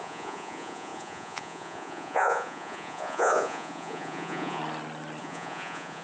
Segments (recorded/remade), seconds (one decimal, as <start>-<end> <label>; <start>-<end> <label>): 0.0-4.6 remade; 4.6-5.2 recorded; 5.2-6.0 remade